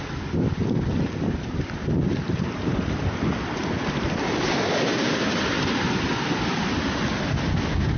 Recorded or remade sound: recorded